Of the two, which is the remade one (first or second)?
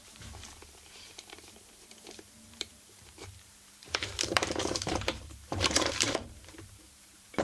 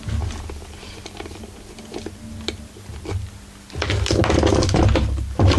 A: first